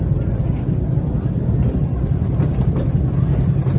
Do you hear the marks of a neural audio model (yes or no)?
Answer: no